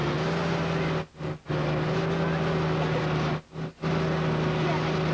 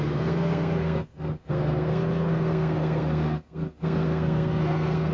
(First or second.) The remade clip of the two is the second